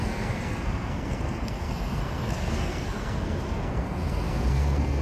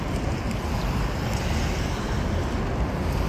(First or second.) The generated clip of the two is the first